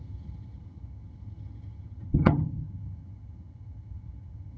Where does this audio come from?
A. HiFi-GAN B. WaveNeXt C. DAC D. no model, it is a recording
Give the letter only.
A